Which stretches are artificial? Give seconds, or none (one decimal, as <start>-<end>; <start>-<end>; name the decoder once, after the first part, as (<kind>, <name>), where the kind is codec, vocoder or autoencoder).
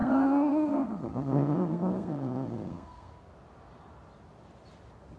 0.0-3.1 (codec, SNAC)